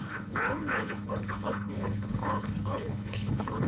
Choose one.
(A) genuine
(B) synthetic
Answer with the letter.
B